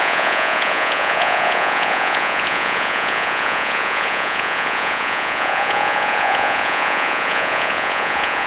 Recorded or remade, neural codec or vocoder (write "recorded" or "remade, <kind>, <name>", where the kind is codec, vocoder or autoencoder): remade, vocoder, Vocos